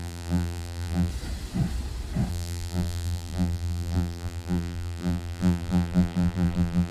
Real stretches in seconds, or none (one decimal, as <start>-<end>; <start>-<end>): 1.1-2.3